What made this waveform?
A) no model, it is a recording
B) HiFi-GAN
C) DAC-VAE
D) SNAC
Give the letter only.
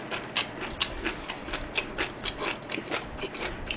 A